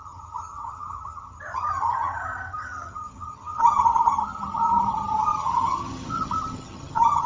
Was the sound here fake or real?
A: fake